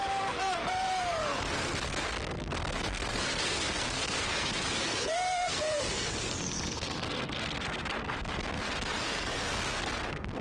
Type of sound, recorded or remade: remade